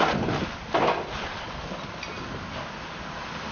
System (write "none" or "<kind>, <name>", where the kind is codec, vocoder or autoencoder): none